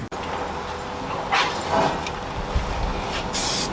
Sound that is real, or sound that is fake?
real